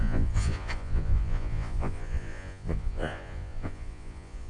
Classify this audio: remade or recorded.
remade